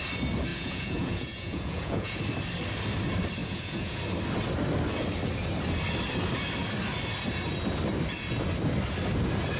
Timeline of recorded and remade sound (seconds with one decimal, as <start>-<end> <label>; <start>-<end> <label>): 0.0-0.5 recorded; 0.5-2.2 remade; 2.2-3.4 recorded; 3.4-4.0 remade; 4.0-9.6 recorded